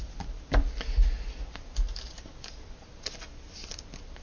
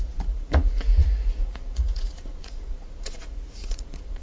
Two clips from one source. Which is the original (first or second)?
first